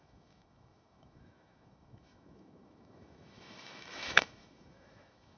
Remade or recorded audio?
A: remade